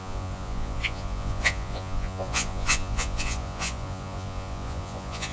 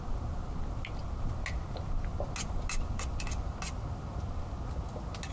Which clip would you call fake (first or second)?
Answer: first